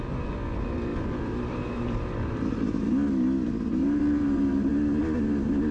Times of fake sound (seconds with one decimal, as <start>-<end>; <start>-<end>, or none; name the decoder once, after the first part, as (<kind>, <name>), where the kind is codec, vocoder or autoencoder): 0.9-2.8 (vocoder, BigVGAN v2); 3.8-4.7